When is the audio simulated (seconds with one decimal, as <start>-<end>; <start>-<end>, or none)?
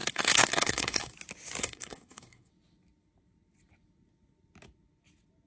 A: 0.0-1.1; 1.6-2.5